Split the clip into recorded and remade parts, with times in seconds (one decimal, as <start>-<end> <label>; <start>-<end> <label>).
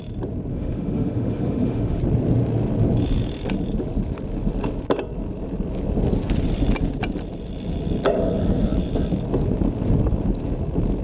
0.0-0.5 recorded; 0.5-2.0 remade; 2.0-11.0 recorded